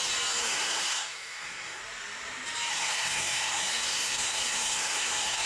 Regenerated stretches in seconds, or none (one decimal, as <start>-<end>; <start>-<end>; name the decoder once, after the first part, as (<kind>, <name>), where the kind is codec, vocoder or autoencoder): 0.4-1.8 (codec, SNAC); 2.7-5.5